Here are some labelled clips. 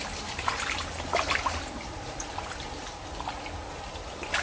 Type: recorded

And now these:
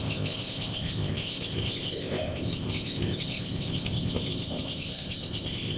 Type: remade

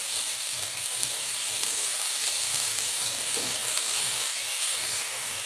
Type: remade